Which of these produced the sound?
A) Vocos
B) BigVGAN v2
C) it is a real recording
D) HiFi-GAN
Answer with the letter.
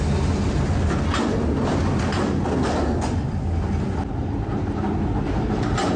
C